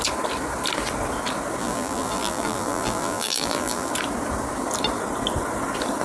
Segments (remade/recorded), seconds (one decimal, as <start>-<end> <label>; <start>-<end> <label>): 0.0-1.6 recorded; 1.6-3.9 remade; 3.9-6.0 recorded